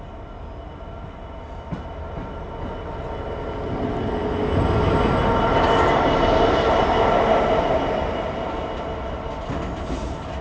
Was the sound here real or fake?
real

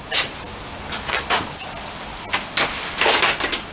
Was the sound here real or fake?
real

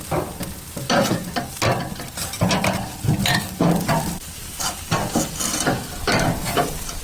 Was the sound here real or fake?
real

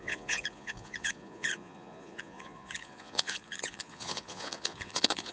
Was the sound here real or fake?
fake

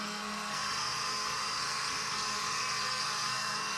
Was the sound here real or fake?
fake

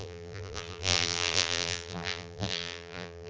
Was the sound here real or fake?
fake